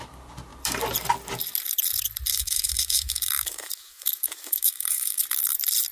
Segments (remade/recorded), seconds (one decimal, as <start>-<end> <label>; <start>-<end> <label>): 0.0-2.3 recorded; 2.3-5.2 remade; 5.2-5.9 recorded